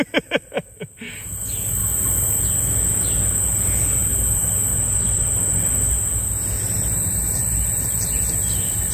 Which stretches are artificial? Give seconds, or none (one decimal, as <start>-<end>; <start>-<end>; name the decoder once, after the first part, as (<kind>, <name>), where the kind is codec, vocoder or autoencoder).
none